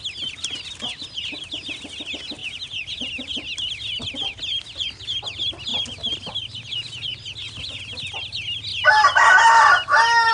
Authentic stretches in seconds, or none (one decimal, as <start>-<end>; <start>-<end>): 0.0-10.3